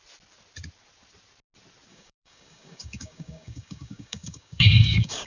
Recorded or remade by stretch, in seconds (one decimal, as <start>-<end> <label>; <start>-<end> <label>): 0.0-1.9 recorded; 1.9-5.3 remade